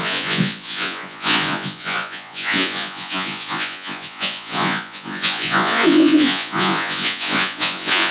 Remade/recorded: remade